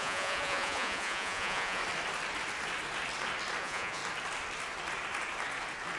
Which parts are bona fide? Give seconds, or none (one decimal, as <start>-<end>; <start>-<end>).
1.8-3.6; 4.0-6.0